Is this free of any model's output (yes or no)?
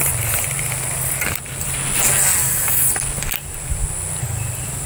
yes